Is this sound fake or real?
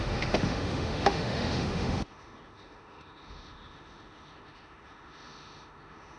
fake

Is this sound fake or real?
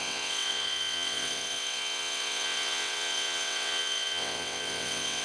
fake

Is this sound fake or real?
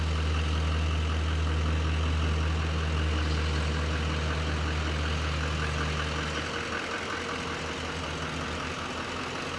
real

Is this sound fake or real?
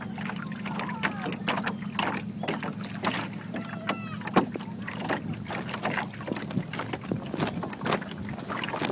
real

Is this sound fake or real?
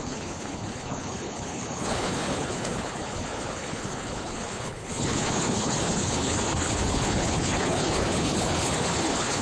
fake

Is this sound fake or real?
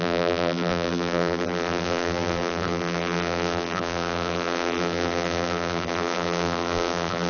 fake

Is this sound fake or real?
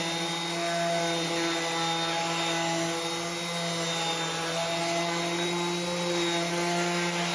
real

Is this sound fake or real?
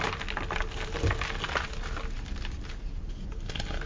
real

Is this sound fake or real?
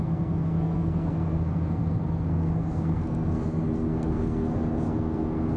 fake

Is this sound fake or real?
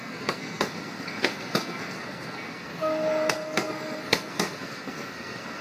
fake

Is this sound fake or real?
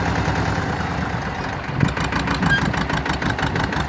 real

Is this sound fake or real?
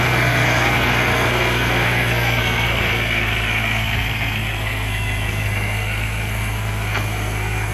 fake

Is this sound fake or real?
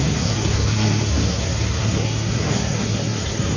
fake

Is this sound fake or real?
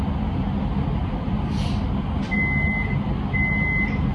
real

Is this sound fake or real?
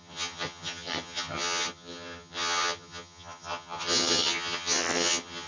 fake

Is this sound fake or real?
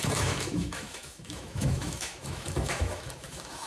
fake